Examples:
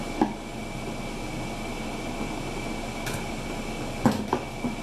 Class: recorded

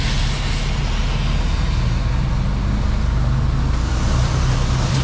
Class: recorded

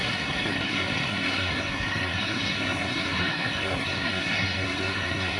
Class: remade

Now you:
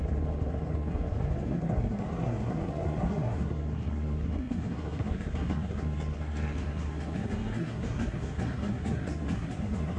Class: remade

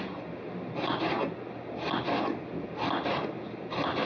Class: recorded